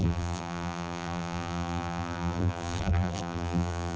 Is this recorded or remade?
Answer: remade